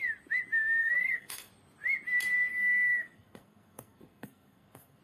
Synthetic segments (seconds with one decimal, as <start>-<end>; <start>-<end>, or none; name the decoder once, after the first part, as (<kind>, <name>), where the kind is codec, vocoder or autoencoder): 0.8-1.5 (codec, SNAC); 2.5-5.0